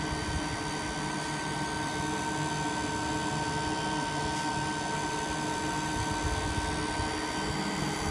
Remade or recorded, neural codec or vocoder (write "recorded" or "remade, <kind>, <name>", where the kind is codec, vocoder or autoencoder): recorded